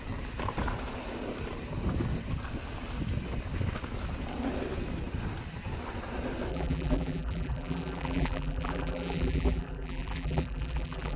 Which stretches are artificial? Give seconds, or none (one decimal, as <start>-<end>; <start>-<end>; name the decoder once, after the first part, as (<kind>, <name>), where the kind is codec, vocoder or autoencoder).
6.5-11.2 (vocoder, BigVGAN v2)